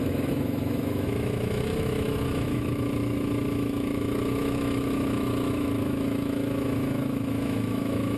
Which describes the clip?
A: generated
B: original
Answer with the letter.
A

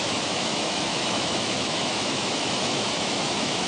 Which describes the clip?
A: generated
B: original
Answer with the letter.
A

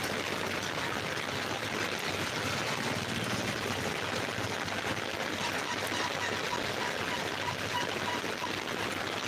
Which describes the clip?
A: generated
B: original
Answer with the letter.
B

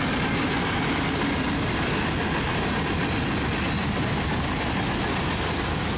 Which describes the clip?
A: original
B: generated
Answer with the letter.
A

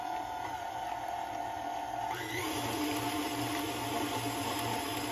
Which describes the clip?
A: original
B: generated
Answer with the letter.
A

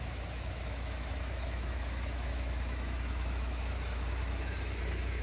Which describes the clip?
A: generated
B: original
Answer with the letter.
A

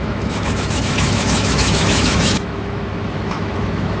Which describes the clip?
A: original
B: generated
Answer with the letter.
B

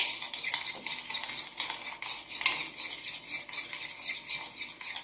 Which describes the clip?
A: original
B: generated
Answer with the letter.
A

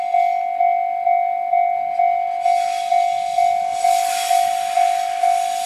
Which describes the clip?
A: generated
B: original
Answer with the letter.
B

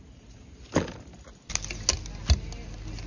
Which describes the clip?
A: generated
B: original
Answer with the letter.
B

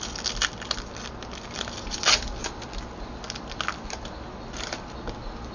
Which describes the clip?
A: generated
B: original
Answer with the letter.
B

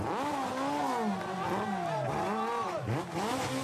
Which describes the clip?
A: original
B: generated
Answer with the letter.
A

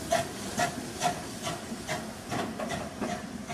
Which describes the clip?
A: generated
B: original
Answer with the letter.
B